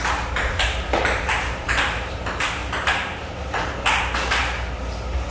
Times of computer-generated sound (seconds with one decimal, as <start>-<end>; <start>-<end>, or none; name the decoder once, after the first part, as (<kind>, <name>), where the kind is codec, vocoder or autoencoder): 0.0-4.4 (vocoder, BigVGAN v2)